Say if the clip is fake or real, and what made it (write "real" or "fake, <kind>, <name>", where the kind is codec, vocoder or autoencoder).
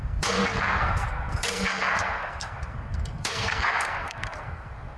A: fake, codec, SNAC